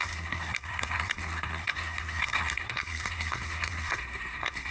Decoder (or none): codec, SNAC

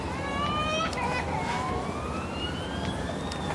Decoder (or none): none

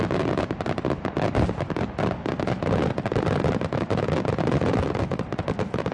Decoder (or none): none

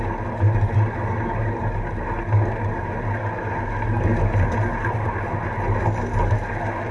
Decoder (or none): none